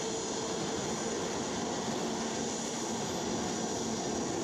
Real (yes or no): yes